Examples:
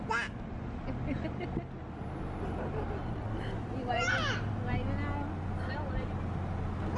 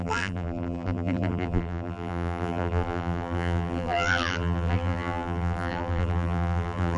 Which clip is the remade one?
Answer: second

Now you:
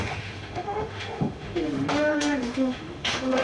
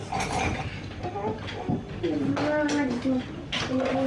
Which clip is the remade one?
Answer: first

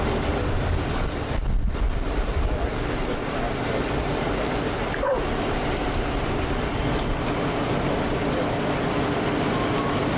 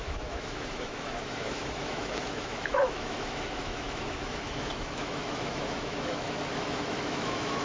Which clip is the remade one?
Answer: second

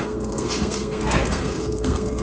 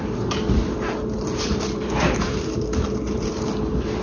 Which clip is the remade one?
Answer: first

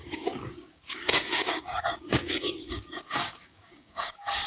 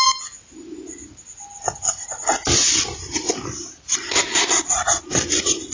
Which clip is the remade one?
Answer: first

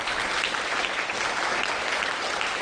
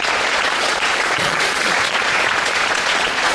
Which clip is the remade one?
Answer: second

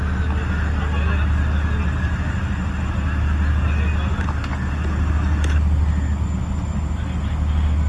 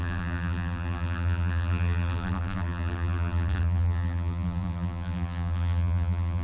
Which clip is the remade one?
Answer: second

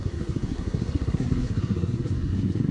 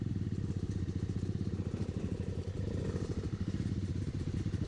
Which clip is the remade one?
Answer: first